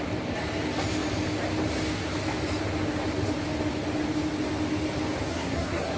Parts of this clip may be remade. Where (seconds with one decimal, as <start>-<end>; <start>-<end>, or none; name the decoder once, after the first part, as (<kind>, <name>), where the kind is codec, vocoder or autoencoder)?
5.3-6.0 (codec, SNAC)